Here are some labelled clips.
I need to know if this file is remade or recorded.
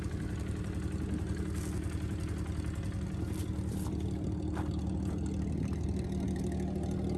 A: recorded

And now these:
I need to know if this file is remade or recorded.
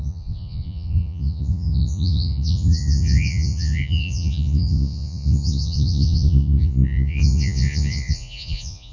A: remade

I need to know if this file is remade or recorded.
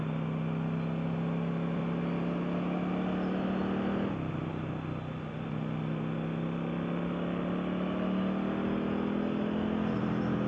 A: recorded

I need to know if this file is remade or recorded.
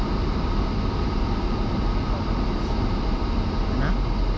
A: recorded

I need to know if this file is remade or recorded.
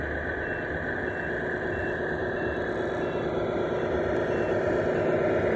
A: recorded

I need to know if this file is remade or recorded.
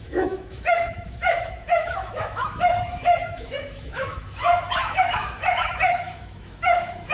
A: remade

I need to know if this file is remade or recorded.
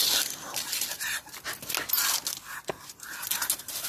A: recorded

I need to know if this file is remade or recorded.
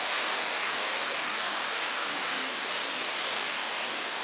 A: remade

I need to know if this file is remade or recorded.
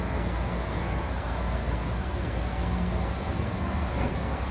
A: remade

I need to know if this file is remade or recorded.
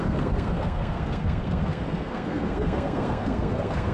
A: remade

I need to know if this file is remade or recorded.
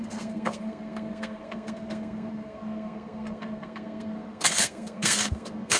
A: remade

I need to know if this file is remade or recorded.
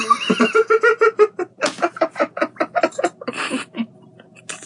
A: recorded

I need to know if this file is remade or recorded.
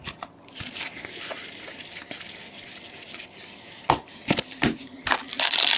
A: recorded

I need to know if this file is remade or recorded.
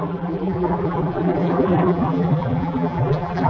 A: remade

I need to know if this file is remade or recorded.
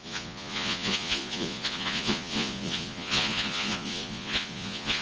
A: remade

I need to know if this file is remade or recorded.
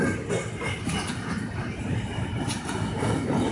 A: recorded